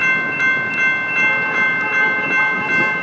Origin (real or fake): real